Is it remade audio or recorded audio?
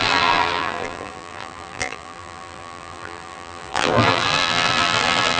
remade